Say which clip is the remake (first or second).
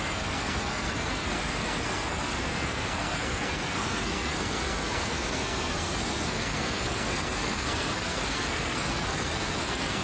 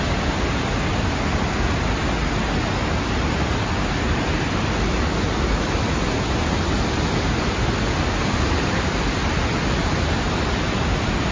first